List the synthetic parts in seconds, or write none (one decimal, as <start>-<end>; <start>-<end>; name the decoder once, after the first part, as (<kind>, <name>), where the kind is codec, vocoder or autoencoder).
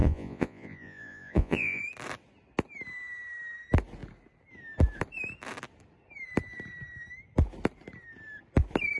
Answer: 0.0-1.8 (vocoder, Vocos)